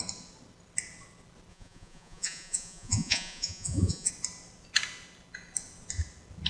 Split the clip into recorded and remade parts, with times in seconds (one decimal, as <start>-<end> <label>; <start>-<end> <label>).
0.0-1.5 recorded; 1.5-4.1 remade; 4.1-6.5 recorded